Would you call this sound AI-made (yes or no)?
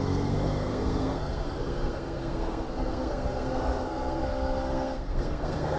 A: yes